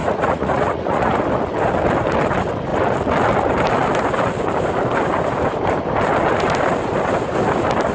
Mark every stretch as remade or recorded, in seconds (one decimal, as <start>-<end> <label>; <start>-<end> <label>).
0.0-1.2 remade; 1.2-7.9 recorded